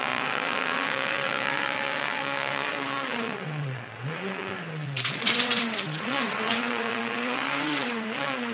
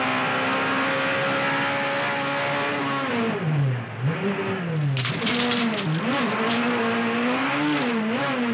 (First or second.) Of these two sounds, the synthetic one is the first